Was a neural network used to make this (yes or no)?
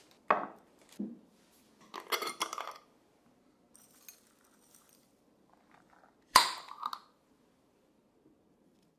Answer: no